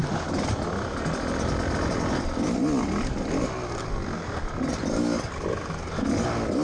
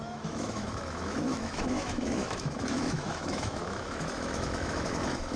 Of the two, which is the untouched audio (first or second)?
first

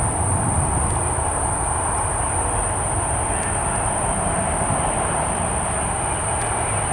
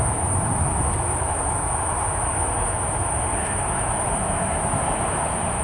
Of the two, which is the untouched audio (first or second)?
first